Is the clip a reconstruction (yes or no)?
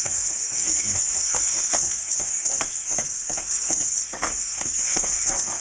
yes